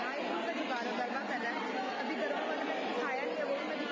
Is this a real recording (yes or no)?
yes